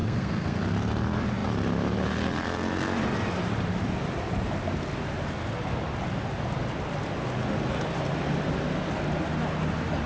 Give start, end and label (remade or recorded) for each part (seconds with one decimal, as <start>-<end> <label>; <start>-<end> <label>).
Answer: 0.0-0.6 remade; 0.6-10.1 recorded